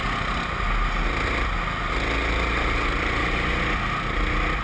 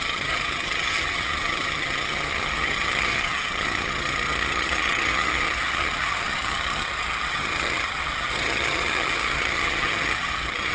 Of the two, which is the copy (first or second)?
second